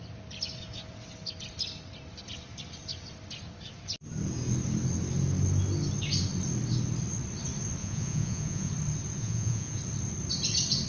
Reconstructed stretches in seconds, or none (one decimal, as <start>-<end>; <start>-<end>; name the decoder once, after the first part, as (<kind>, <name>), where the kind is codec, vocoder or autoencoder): 7.8-8.7 (vocoder, Vocos); 9.2-9.8